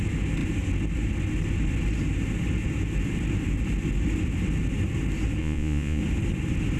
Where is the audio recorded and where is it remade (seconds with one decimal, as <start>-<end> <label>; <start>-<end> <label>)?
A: 0.0-5.4 recorded; 5.4-6.0 remade; 6.0-6.8 recorded